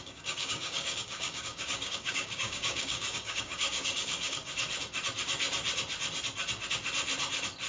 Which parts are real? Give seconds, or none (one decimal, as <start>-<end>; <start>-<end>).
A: 4.4-7.7